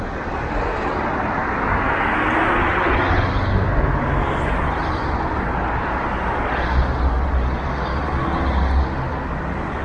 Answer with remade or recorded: recorded